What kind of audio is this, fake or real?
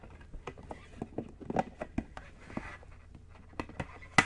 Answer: real